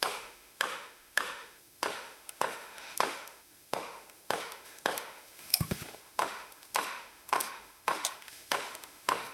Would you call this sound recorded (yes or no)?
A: no